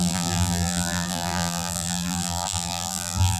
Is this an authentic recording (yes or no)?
no